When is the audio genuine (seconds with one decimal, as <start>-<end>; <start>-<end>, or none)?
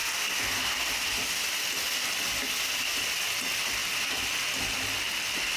0.0-5.6